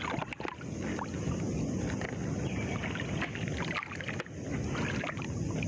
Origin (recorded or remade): recorded